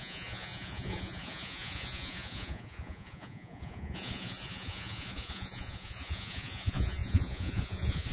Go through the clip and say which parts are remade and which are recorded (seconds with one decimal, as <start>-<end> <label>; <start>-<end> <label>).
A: 0.0-8.1 remade